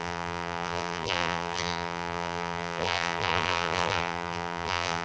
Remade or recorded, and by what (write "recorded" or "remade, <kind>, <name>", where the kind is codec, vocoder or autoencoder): remade, vocoder, BigVGAN v2